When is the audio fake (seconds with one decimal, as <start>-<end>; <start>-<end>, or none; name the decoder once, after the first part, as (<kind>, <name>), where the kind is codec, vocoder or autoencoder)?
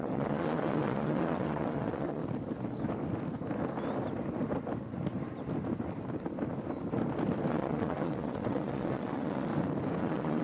0.0-2.2 (vocoder, WaveNeXt); 7.5-9.5; 10.0-10.4